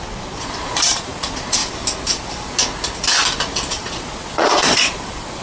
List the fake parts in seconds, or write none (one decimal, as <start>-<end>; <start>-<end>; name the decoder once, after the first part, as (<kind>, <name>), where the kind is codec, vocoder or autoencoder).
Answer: 0.0-1.6 (vocoder, Vocos); 3.7-5.4